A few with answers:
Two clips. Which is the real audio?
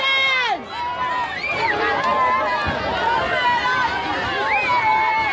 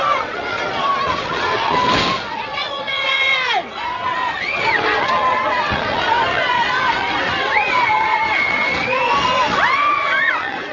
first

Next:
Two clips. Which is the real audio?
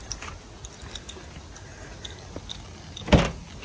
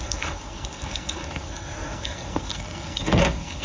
first